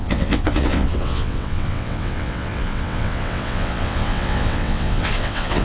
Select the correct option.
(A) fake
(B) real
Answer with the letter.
A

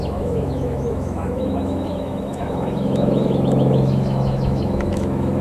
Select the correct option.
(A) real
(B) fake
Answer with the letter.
B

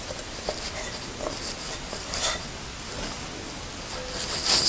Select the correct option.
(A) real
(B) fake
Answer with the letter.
A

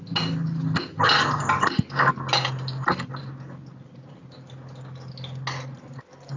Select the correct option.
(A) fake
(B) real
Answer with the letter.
B